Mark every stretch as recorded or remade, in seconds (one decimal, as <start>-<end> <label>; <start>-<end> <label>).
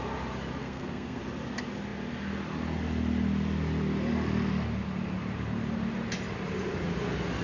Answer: 0.0-0.6 recorded; 0.6-1.2 remade; 1.2-7.4 recorded